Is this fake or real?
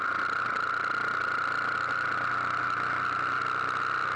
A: real